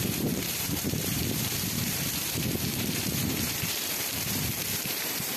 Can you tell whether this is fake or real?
fake